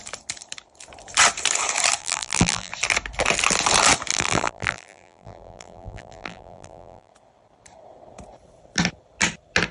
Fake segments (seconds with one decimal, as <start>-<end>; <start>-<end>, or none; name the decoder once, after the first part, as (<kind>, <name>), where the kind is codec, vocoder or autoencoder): 2.0-2.7 (vocoder, BigVGAN v2); 4.1-7.1

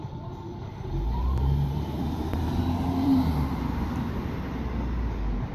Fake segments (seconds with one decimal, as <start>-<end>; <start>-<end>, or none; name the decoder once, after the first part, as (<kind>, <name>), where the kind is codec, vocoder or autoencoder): 0.0-4.2 (vocoder, BigVGAN v2)

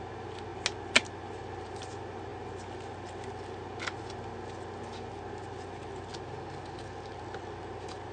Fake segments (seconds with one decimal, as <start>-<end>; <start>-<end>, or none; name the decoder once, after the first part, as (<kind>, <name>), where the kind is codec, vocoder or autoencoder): none

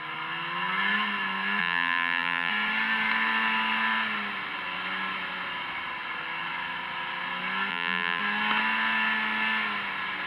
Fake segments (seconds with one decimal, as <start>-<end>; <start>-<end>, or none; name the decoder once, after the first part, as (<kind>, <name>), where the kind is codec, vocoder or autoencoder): 1.6-2.5 (vocoder, BigVGAN v2); 7.7-8.2